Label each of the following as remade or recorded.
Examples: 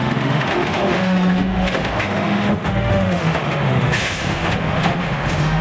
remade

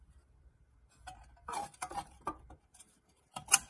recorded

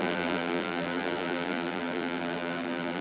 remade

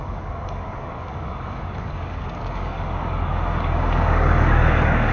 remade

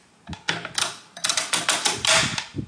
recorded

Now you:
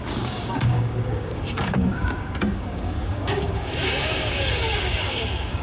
remade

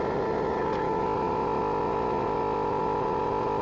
recorded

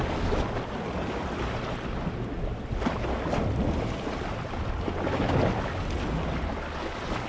recorded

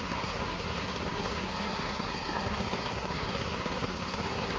remade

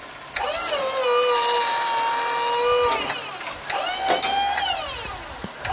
recorded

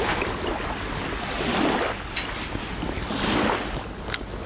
recorded